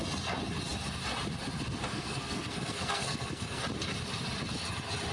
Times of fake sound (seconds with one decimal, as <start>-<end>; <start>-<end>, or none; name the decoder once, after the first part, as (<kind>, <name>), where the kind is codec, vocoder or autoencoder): 1.9-3.6 (codec, SNAC)